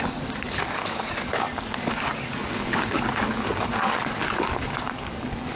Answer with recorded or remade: remade